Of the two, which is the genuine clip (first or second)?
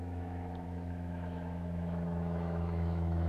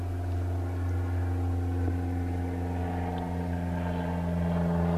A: second